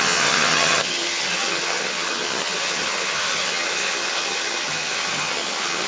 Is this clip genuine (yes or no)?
no